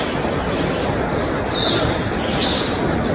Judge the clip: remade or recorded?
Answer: recorded